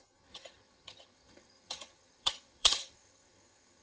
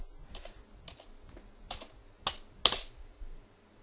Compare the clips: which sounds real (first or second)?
second